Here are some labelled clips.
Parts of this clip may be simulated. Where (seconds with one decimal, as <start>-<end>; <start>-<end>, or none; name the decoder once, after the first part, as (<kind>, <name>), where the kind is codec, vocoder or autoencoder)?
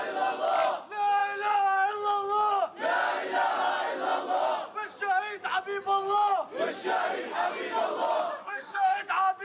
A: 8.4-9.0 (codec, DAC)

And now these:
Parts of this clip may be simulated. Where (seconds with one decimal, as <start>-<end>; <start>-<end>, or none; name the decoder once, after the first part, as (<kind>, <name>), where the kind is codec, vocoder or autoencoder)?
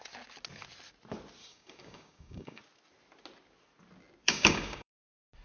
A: 1.4-2.6 (codec, DAC); 4.2-5.0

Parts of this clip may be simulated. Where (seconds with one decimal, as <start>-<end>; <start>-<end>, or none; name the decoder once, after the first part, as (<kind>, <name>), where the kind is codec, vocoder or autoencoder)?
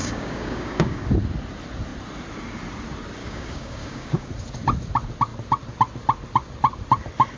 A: 0.0-1.1 (codec, DAC); 3.2-4.3